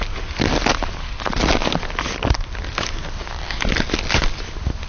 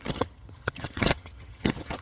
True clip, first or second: first